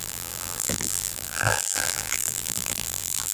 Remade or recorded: remade